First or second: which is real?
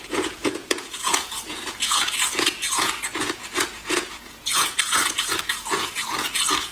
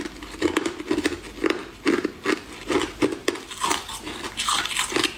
second